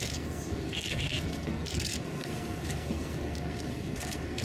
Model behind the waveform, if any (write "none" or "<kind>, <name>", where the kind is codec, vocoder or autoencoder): codec, SNAC